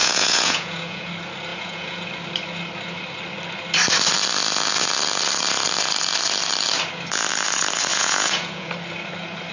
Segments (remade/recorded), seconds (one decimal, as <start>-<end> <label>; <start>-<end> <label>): 0.0-1.1 remade; 1.1-1.5 recorded; 1.5-2.1 remade; 2.1-7.9 recorded; 7.9-8.7 remade; 8.7-9.5 recorded